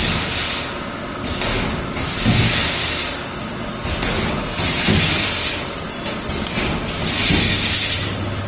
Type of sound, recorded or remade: recorded